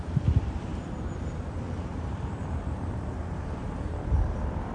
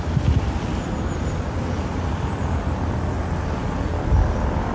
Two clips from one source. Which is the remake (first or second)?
first